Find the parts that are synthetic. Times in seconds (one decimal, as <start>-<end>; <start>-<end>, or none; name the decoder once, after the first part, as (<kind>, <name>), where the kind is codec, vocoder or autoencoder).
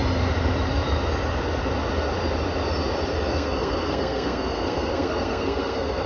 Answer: 3.3-6.1 (codec, SNAC)